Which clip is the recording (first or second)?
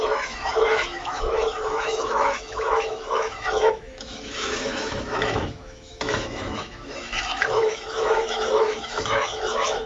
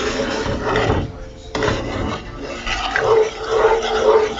second